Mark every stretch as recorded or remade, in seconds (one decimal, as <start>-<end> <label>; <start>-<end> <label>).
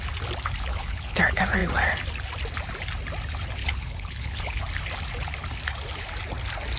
0.0-0.7 recorded; 0.7-1.2 remade; 1.2-3.6 recorded; 3.6-4.6 remade; 4.6-6.8 recorded